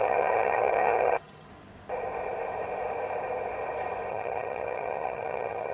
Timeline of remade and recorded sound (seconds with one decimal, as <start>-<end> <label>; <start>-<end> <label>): 0.0-1.5 remade; 1.5-4.1 recorded; 4.1-5.7 remade